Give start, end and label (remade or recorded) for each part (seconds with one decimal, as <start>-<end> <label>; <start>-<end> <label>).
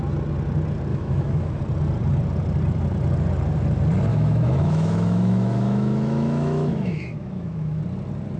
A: 0.0-0.9 recorded; 0.9-1.6 remade; 1.6-4.1 recorded; 4.1-7.8 remade; 7.8-8.4 recorded